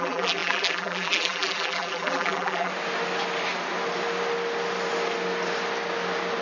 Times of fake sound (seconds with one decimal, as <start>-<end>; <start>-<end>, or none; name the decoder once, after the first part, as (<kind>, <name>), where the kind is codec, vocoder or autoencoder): 0.0-2.7 (vocoder, BigVGAN v2)